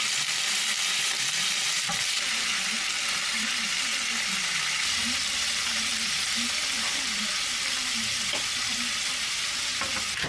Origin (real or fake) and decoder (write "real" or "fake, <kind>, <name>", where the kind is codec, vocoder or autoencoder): real